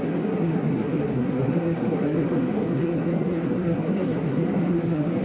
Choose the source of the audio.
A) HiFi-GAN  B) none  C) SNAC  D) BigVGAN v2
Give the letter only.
C